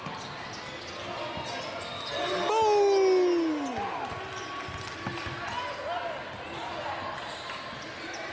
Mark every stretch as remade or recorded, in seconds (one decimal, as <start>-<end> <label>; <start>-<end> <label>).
0.0-8.3 recorded